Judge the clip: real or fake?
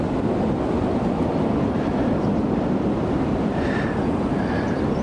real